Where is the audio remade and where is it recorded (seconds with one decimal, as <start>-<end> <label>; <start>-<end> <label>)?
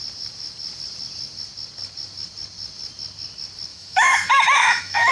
0.0-3.7 recorded; 3.7-5.1 remade